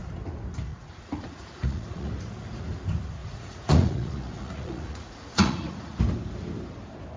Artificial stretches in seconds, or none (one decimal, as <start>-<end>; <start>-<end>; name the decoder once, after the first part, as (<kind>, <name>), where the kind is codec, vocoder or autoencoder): 0.7-2.1 (vocoder, Vocos); 3.2-6.0